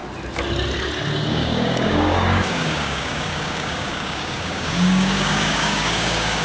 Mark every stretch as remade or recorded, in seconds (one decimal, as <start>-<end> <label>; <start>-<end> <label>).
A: 0.0-1.3 recorded; 1.3-6.4 remade